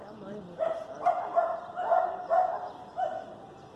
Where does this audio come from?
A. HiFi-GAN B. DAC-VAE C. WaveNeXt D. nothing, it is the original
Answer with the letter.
D